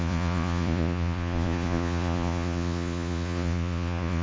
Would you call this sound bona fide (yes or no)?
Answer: no